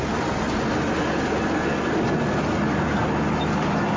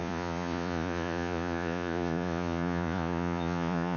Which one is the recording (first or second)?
first